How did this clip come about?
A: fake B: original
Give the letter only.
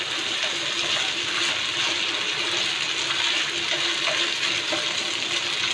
B